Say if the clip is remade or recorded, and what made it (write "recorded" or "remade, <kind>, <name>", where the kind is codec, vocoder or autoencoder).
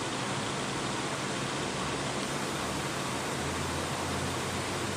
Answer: recorded